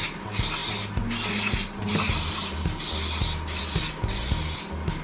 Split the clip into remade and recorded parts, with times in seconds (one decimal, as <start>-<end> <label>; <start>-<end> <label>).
0.0-5.0 recorded